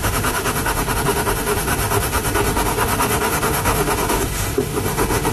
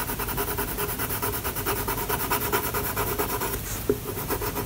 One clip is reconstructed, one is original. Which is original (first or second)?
second